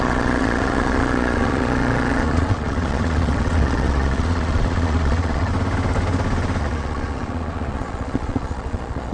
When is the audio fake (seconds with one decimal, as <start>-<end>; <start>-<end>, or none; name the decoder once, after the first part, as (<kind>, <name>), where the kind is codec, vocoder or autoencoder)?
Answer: 0.0-5.5 (vocoder, Vocos); 6.6-9.1

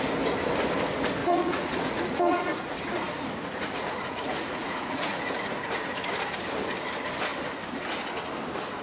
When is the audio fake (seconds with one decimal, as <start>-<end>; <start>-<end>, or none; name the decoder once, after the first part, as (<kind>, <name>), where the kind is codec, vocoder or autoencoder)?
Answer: 1.2-5.8 (vocoder, Vocos)